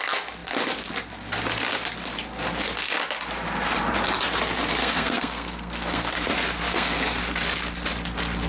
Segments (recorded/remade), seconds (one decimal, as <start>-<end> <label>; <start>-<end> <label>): 0.0-4.8 recorded; 4.8-6.3 remade; 6.3-6.7 recorded; 6.7-7.2 remade; 7.2-8.5 recorded